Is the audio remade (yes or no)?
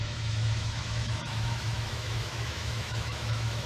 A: yes